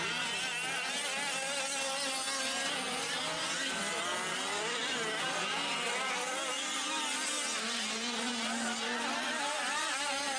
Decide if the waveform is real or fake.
real